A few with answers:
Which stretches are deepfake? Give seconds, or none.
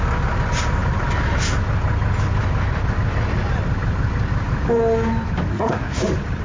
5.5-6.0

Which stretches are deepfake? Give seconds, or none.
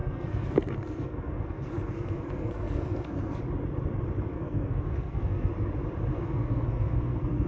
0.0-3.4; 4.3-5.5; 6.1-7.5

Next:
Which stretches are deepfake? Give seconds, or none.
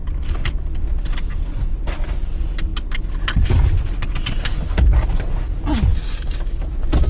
none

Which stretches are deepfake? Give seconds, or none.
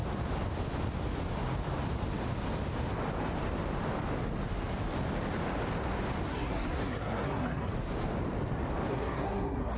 6.3-7.7; 8.9-9.8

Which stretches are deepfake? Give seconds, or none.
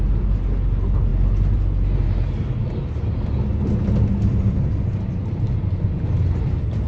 none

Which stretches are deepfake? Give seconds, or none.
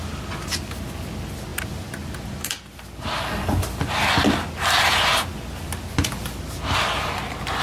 none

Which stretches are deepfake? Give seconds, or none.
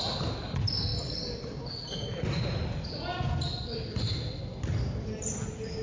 none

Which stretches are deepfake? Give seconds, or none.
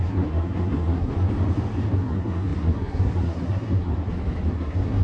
0.0-1.1; 1.9-3.9; 4.5-5.0